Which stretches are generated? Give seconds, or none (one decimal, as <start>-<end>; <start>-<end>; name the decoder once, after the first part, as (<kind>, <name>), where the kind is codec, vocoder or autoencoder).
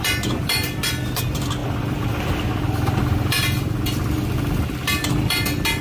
none